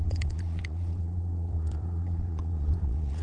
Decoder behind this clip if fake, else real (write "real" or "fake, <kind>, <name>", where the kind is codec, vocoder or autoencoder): fake, vocoder, Vocos